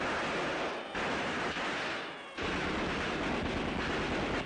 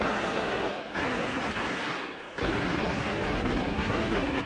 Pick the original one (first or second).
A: first